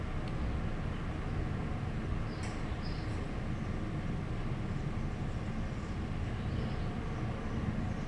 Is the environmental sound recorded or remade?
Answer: recorded